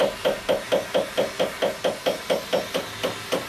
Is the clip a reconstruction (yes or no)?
no